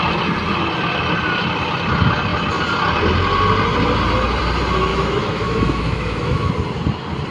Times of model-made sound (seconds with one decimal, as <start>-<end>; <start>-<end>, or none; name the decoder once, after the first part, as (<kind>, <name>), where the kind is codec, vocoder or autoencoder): 4.9-6.5 (autoencoder, DAC-VAE)